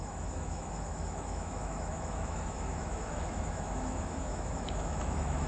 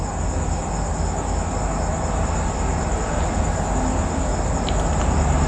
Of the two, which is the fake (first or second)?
first